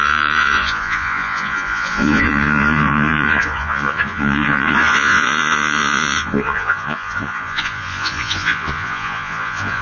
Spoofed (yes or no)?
yes